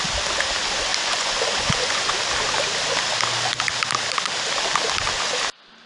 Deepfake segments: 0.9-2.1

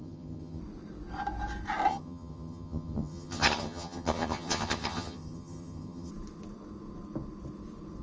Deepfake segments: 0.0-0.6; 1.9-6.1

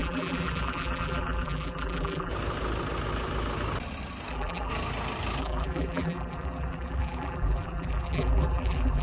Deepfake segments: 0.0-2.3; 4.3-4.7; 5.4-9.0

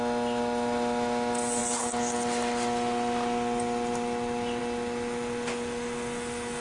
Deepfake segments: none

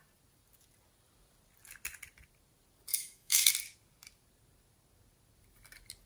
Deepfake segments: 2.9-3.5

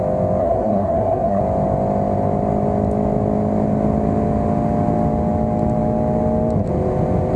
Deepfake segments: 0.4-1.4

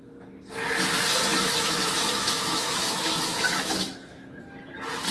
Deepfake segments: 1.3-4.4